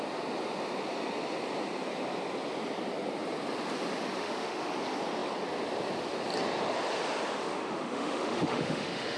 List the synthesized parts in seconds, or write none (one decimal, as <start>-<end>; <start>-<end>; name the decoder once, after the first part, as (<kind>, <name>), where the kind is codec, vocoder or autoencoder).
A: 4.2-4.7 (autoencoder, DAC-VAE); 7.4-9.2